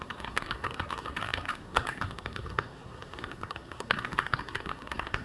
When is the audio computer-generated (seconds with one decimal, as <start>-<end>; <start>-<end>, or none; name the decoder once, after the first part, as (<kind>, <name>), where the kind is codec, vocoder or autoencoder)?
0.0-5.2 (codec, SNAC)